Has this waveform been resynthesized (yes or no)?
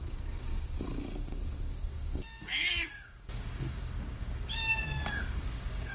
yes